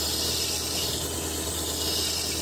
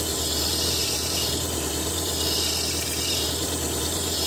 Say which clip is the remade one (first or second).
second